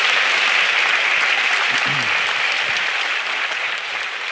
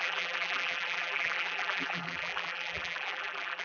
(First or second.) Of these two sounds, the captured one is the first